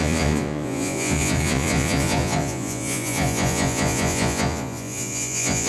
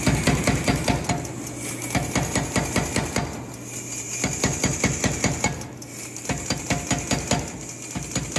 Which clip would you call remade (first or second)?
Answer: first